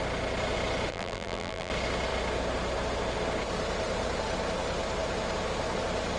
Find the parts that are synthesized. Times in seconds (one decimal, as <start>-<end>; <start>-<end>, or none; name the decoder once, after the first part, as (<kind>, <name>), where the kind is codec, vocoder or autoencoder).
0.9-1.7 (vocoder, BigVGAN v2)